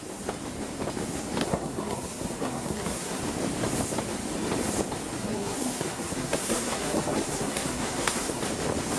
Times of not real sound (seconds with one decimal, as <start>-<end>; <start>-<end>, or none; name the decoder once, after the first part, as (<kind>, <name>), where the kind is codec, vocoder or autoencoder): 1.4-3.2 (codec, SNAC); 5.2-8.4